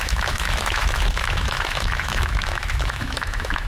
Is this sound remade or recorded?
remade